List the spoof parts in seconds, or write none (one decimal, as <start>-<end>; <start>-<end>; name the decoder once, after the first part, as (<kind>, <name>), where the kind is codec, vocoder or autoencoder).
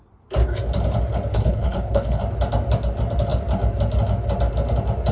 1.3-2.2 (codec, HILCodec)